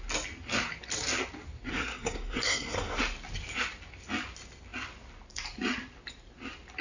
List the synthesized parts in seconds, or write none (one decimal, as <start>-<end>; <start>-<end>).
1.7-3.0